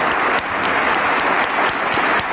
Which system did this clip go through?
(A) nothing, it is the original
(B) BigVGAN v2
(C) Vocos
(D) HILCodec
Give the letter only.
A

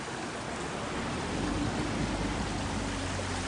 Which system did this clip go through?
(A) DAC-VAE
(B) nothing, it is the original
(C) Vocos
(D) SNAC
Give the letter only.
B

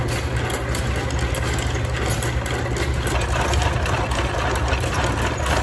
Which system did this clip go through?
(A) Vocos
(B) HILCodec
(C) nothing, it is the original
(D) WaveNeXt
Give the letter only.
C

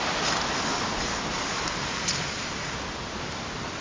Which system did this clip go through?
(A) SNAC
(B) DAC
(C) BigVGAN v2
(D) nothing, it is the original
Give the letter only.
D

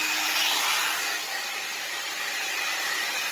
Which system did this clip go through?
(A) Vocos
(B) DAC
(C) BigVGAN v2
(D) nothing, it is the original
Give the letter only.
D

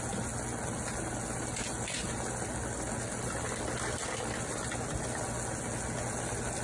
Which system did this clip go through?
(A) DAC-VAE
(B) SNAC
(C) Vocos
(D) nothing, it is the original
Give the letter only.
D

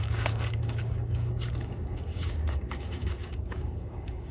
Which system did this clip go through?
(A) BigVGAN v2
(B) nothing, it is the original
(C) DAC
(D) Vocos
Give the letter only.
C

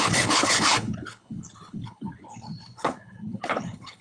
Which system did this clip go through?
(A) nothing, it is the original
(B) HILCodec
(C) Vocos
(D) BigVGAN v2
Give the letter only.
B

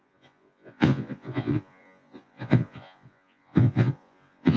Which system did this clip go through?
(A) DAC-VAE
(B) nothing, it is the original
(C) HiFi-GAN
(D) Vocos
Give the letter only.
D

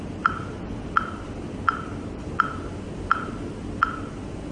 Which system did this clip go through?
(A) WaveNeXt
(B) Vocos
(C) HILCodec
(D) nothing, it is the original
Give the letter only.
D